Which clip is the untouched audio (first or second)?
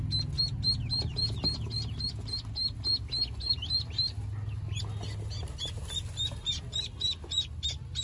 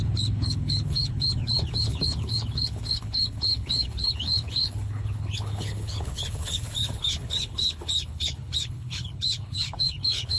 first